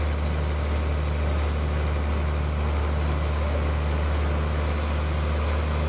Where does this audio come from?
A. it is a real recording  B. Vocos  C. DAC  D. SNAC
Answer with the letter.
A